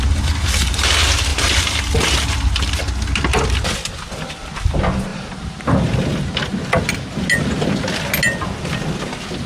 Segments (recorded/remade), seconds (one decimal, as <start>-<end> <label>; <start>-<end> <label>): 0.0-1.3 recorded; 1.3-2.7 remade; 2.7-5.1 recorded; 5.1-6.4 remade; 6.4-9.5 recorded